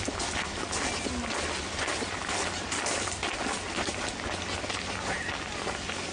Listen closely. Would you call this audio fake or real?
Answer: real